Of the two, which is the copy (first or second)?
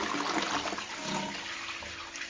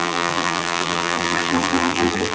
second